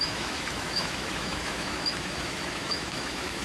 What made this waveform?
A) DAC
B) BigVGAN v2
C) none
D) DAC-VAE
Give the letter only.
D